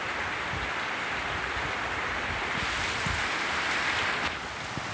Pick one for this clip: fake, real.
real